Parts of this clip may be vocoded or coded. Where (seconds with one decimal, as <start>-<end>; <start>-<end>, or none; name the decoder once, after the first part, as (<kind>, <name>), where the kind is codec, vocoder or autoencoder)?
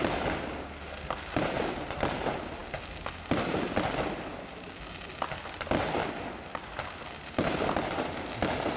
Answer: none